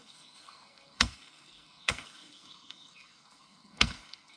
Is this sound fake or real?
fake